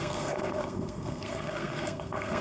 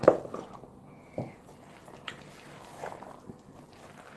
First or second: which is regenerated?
first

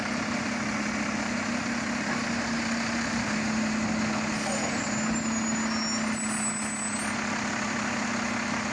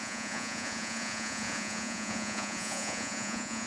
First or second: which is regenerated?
second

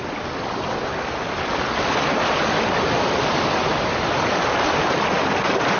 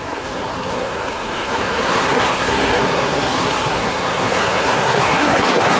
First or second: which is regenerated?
second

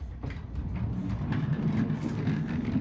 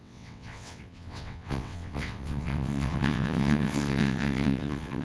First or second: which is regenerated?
second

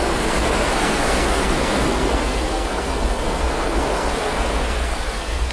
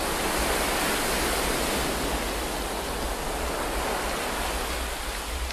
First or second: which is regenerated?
first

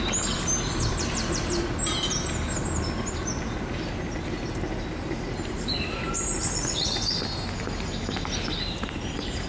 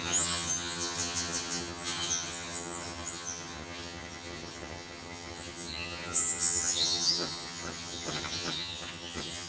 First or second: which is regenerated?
second